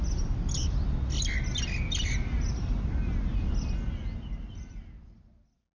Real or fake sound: real